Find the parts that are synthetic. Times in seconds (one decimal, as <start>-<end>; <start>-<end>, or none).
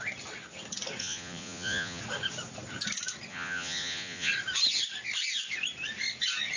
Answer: 1.0-2.0; 3.3-4.3